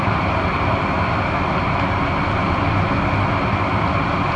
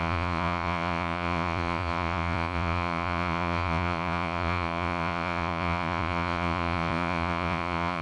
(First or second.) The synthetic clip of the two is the second